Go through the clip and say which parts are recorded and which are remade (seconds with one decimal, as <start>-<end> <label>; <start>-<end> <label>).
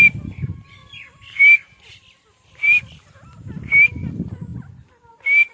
0.0-0.8 remade; 0.8-4.1 recorded; 4.1-4.5 remade; 4.5-5.5 recorded